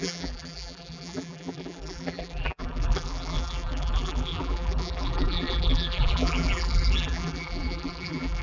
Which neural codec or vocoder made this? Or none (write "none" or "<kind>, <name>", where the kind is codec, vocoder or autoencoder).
vocoder, BigVGAN v2